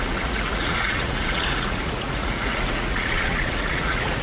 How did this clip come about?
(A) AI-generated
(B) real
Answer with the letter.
A